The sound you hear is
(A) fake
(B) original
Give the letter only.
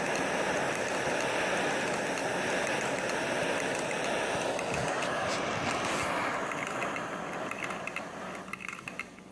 B